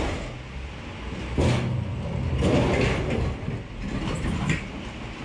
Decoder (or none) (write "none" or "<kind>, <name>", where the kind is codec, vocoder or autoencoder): none